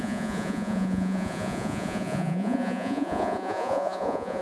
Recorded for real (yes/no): no